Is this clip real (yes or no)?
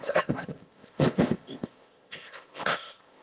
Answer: no